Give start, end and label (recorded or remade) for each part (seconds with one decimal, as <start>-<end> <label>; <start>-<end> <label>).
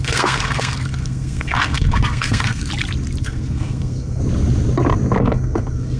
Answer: 0.0-2.7 remade; 2.7-3.2 recorded; 3.2-4.2 remade; 4.2-5.2 recorded; 5.2-6.0 remade